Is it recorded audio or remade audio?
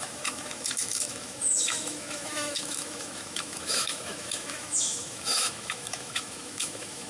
remade